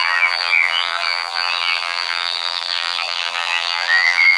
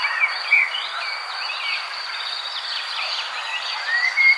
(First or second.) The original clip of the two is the second